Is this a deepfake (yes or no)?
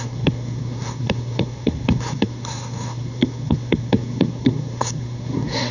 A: yes